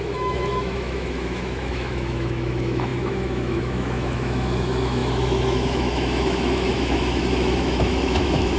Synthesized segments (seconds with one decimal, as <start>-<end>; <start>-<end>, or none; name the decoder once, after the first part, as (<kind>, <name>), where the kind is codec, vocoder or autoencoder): 0.0-8.6 (autoencoder, DAC-VAE)